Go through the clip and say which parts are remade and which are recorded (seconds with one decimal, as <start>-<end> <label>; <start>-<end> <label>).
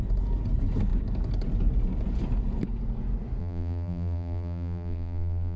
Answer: 0.0-3.4 recorded; 3.4-5.6 remade